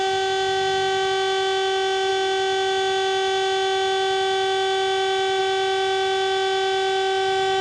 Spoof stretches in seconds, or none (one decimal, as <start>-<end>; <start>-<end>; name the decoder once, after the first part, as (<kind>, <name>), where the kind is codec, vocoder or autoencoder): none

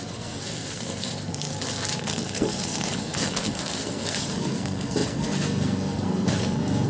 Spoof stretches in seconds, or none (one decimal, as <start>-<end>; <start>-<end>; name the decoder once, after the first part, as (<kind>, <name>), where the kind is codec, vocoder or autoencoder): 0.0-1.5 (codec, SNAC); 2.0-6.9

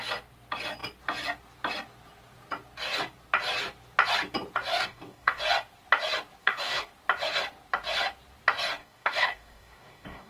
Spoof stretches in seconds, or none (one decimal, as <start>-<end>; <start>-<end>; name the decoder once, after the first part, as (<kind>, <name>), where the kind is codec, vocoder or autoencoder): 4.7-5.4 (codec, DAC); 6.4-6.9; 8.8-10.3

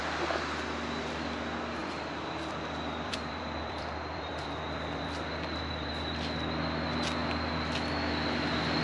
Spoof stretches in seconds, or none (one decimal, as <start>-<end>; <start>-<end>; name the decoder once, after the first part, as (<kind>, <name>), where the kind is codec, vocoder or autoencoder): 1.8-5.9 (vocoder, BigVGAN v2)

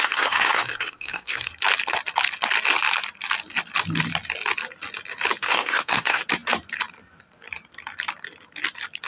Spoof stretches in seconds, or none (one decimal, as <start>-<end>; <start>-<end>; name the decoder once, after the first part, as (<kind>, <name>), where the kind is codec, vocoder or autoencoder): 0.0-1.5 (codec, SNAC); 5.4-6.2